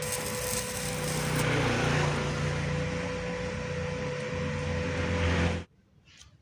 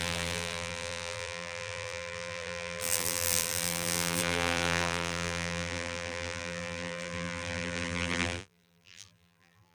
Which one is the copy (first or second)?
second